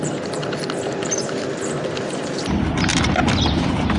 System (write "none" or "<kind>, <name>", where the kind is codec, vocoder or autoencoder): none